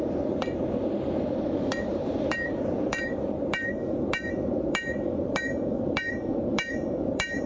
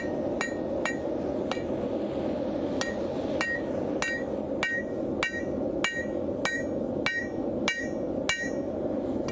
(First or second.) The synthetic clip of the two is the first